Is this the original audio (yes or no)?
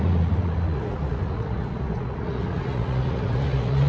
no